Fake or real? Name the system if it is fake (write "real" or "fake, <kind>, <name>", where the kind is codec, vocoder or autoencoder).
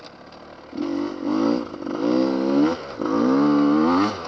real